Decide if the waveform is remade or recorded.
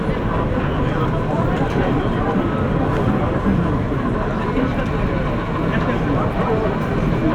recorded